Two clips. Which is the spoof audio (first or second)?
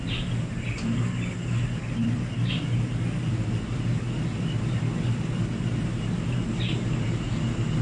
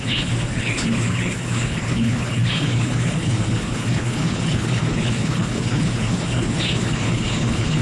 second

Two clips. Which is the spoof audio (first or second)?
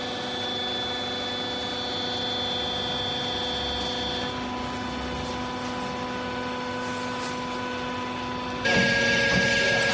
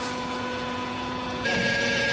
second